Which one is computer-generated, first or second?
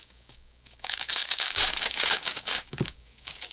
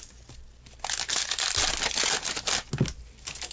first